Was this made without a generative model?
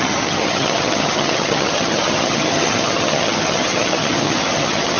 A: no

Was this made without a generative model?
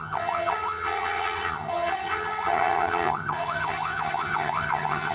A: no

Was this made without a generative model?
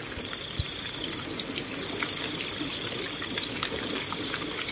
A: yes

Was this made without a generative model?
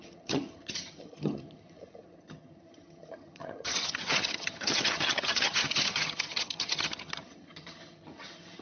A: no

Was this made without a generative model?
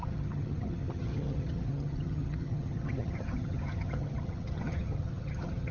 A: no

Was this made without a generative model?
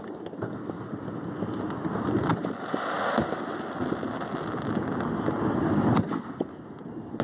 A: yes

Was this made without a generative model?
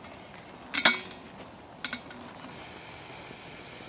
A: yes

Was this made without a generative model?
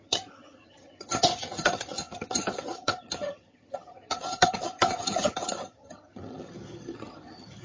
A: no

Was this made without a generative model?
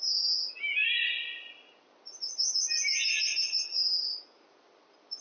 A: yes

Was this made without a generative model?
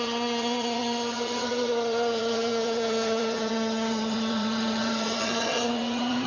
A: no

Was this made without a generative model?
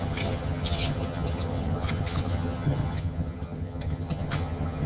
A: no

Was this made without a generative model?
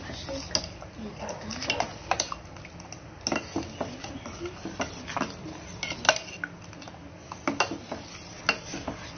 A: yes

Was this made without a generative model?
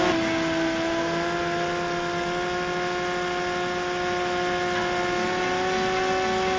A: yes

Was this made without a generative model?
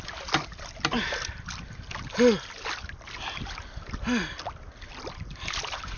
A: yes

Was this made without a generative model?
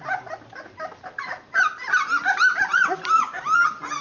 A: yes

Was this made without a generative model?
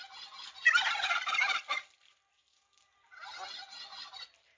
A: yes